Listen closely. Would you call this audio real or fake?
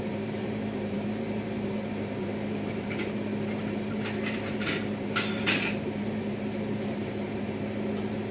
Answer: fake